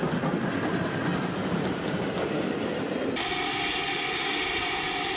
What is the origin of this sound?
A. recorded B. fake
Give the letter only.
A